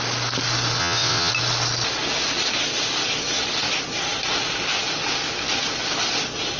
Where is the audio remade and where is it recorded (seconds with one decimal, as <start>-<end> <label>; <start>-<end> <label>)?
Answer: 0.0-0.8 recorded; 0.8-1.3 remade; 1.3-6.6 recorded